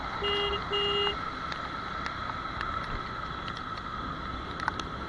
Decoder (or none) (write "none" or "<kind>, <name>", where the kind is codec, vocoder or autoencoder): none